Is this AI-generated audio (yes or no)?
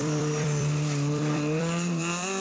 yes